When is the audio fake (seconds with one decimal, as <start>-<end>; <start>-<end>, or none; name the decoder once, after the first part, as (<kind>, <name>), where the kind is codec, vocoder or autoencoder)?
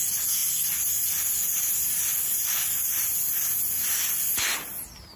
none